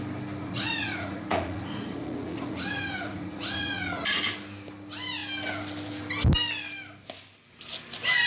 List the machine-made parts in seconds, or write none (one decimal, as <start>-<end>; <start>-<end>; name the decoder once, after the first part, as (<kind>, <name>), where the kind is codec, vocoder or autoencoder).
0.4-4.2 (vocoder, Vocos)